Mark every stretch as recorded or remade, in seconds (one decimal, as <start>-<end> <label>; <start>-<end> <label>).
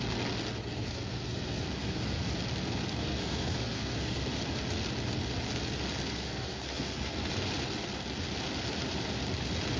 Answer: 0.0-0.6 recorded; 0.6-2.3 remade; 2.3-3.0 recorded; 3.0-4.4 remade; 4.4-6.1 recorded; 6.1-7.3 remade; 7.3-9.8 recorded